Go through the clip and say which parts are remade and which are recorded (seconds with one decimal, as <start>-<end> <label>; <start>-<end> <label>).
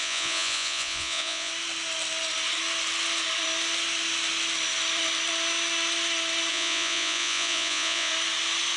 0.0-1.5 remade; 1.5-6.5 recorded; 6.5-8.1 remade; 8.1-8.8 recorded